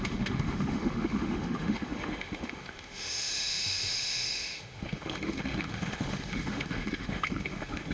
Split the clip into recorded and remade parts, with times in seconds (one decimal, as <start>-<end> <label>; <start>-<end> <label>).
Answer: 0.0-7.9 remade